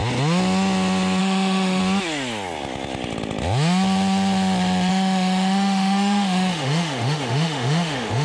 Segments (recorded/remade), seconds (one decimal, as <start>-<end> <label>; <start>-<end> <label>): 0.0-1.2 recorded; 1.2-1.8 remade; 1.8-4.9 recorded; 4.9-8.2 remade